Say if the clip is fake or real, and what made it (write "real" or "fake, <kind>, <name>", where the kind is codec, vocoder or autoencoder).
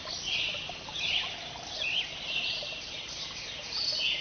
real